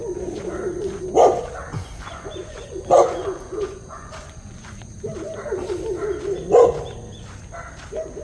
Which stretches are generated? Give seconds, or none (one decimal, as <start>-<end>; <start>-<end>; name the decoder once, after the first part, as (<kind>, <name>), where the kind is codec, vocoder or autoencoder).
1.7-4.9 (vocoder, Vocos)